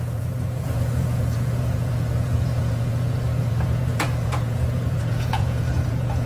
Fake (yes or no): yes